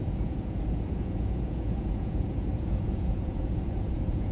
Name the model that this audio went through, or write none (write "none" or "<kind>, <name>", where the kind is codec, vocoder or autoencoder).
vocoder, Vocos